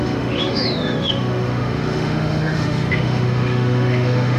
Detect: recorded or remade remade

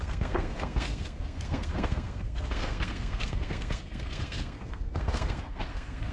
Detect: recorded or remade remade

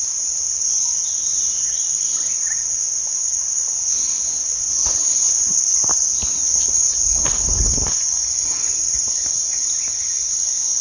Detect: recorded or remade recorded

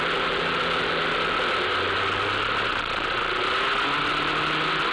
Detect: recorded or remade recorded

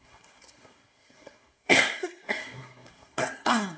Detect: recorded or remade remade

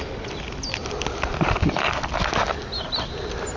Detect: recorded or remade recorded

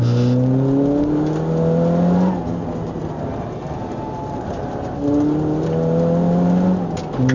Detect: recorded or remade recorded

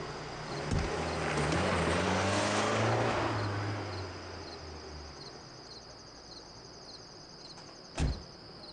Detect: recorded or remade recorded